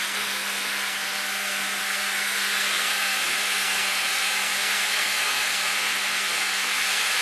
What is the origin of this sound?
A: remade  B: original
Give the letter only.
A